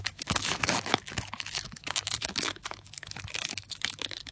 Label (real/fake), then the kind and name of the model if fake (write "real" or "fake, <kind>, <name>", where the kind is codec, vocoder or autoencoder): fake, autoencoder, DAC-VAE